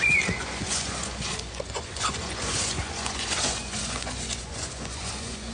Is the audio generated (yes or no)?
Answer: yes